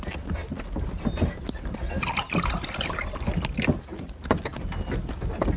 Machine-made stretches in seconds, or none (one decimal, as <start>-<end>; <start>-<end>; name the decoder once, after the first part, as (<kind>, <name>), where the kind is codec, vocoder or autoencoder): none